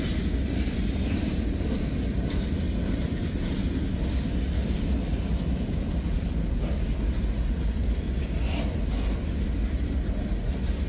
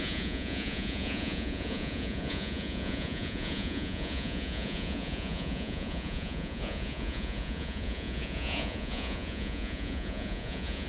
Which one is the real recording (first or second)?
first